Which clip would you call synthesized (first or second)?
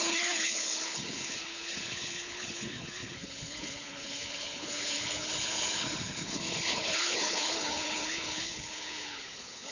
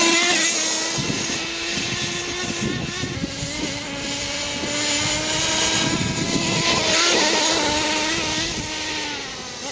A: first